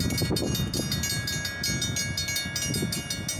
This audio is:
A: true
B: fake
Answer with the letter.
A